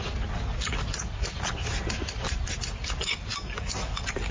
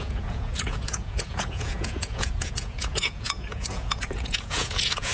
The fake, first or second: second